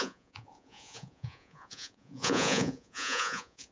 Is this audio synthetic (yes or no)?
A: yes